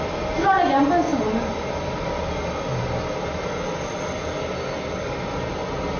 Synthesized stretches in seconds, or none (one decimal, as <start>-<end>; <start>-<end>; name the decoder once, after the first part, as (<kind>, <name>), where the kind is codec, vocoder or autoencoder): none